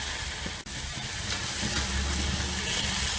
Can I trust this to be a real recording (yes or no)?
yes